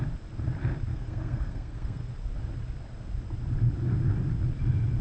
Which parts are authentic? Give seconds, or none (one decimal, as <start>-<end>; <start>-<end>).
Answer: 0.0-0.9; 2.1-5.0